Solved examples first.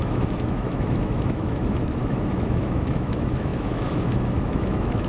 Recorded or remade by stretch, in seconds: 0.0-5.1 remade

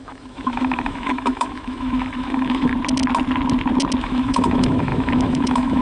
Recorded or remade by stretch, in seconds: 0.0-2.7 remade; 2.7-4.0 recorded; 4.0-5.8 remade

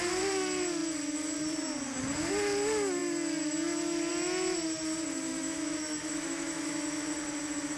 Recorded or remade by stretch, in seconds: 0.0-5.3 recorded; 5.3-7.1 remade; 7.1-7.8 recorded